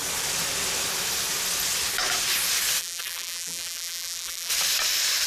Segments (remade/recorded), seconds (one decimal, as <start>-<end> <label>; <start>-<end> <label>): 0.0-2.8 recorded; 2.8-4.5 remade; 4.5-5.3 recorded